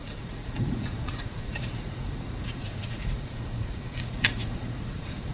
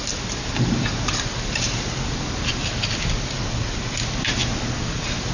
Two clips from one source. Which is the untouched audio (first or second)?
second